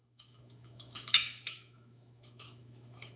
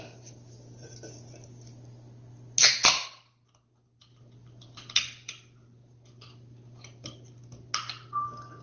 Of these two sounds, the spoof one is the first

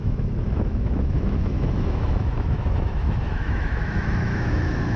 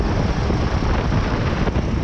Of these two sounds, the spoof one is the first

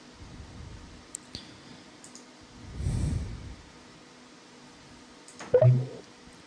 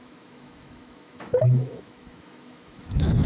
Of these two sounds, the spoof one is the second